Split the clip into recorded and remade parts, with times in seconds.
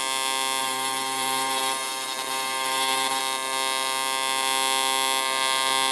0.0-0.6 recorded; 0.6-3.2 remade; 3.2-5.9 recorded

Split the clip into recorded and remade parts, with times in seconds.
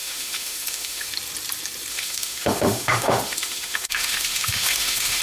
0.0-1.1 remade; 1.1-1.9 recorded; 1.9-5.2 remade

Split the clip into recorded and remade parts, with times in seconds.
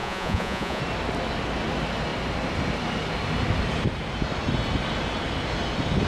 0.0-0.8 remade; 0.8-6.1 recorded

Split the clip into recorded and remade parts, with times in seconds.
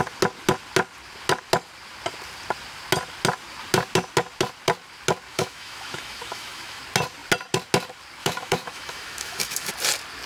0.0-5.3 recorded; 5.3-6.8 remade; 6.8-8.2 recorded; 8.2-9.7 remade; 9.7-10.3 recorded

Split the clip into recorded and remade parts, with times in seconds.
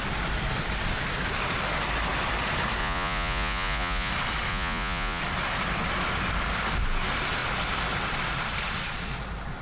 0.0-2.8 recorded; 2.8-4.1 remade; 4.1-4.5 recorded; 4.5-5.2 remade; 5.2-9.6 recorded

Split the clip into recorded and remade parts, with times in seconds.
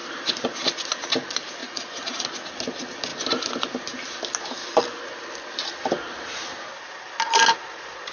0.0-1.6 recorded; 1.6-2.2 remade; 2.2-8.1 recorded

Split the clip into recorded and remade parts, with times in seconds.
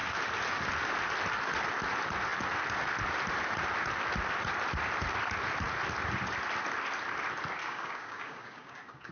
0.0-7.6 recorded; 7.6-9.1 remade